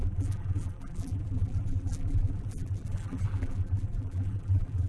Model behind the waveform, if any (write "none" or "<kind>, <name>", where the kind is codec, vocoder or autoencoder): vocoder, BigVGAN v2